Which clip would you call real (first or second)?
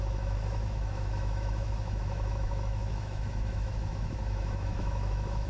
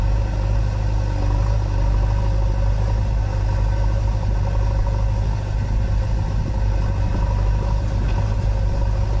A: second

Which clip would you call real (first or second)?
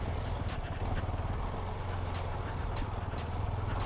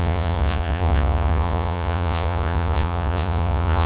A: first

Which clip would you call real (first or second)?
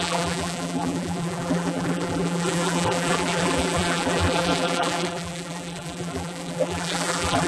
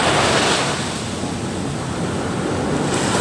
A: second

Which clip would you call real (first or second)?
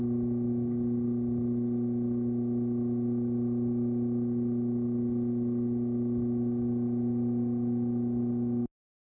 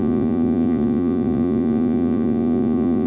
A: first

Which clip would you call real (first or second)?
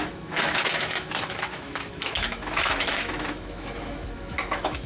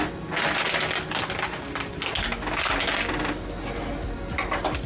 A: second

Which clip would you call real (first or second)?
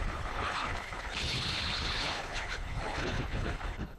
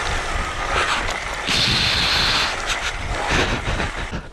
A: second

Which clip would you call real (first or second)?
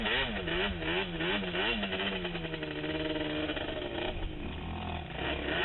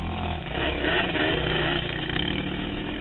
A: first